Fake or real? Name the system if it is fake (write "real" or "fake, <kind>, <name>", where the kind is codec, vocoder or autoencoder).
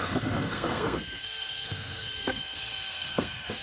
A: fake, codec, SNAC